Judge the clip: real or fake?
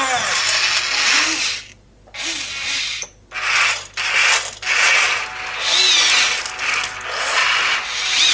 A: real